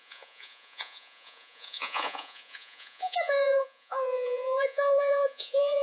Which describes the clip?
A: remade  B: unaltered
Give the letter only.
A